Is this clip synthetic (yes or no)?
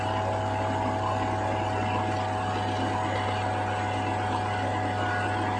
no